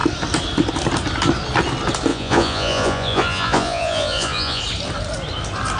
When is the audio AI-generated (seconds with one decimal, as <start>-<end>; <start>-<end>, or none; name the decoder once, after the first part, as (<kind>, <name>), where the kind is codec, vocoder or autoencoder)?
2.1-4.6 (vocoder, Vocos)